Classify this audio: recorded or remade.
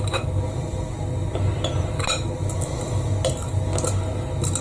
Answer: recorded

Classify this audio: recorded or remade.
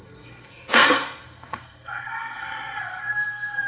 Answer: remade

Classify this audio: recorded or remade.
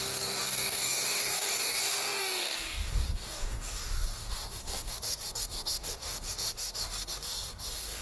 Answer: remade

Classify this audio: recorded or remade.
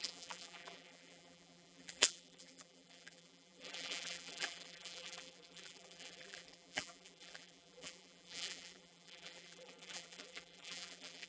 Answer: remade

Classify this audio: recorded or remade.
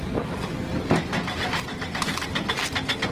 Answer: recorded